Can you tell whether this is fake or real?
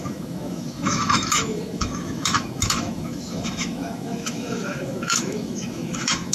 fake